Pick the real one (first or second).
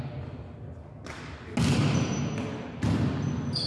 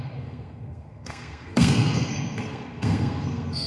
first